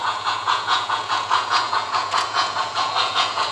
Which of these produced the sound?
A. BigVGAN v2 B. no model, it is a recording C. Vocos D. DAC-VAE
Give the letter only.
C